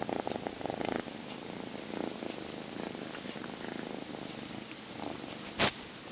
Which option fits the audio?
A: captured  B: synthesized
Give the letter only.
A